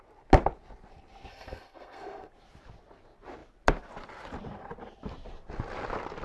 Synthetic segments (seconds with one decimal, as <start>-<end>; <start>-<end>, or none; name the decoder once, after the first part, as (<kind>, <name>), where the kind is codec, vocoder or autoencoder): 1.3-2.3 (codec, SNAC)